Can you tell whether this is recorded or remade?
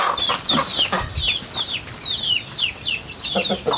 recorded